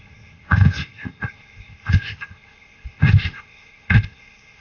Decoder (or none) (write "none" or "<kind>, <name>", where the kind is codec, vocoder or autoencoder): codec, ZipCodec